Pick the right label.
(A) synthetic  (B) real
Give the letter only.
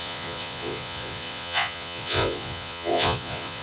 A